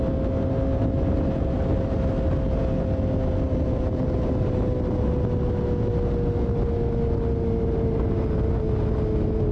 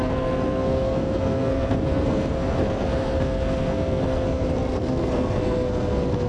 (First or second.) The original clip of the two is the first